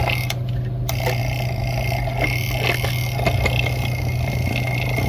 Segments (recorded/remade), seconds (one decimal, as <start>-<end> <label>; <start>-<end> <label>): 0.0-5.1 recorded